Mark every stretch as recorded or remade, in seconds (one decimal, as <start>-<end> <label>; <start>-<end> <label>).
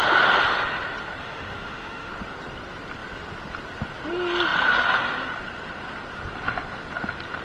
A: 0.0-1.2 recorded; 1.2-2.1 remade; 2.1-7.4 recorded